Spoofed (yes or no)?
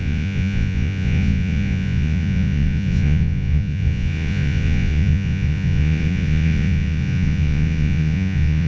yes